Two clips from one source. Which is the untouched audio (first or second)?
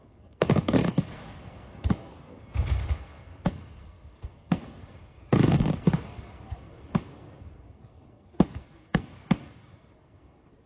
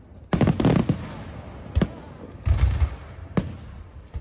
second